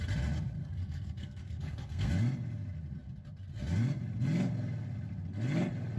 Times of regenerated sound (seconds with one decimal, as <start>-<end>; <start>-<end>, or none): 0.6-2.1